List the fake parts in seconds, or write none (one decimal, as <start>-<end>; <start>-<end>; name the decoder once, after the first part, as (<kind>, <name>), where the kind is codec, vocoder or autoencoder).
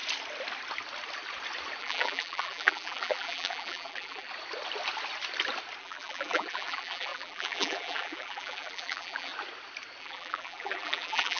1.8-4.3 (vocoder, BigVGAN v2); 5.8-9.3; 10.0-11.4